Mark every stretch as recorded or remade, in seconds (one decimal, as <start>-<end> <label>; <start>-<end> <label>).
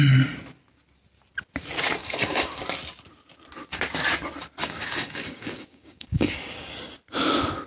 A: 0.0-2.0 recorded; 2.0-2.6 remade; 2.6-4.6 recorded; 4.6-6.7 remade; 6.7-7.7 recorded